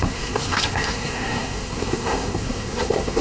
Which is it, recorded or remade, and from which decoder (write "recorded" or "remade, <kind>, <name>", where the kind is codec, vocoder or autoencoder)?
remade, codec, SNAC